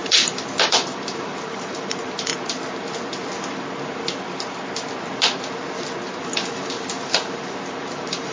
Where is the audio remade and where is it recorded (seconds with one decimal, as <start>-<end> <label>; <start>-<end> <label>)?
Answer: 0.0-2.3 remade; 2.3-6.2 recorded; 6.2-8.3 remade

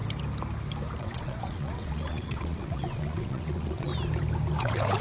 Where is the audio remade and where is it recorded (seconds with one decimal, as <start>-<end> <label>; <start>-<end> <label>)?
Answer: 0.0-1.0 recorded; 1.0-3.9 remade; 3.9-4.6 recorded; 4.6-5.0 remade